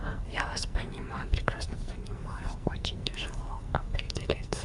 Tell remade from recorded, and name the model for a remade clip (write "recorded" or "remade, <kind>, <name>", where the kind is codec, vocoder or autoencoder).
remade, codec, SNAC